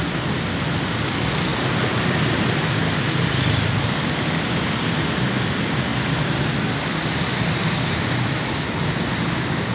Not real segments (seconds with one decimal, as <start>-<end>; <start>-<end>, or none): none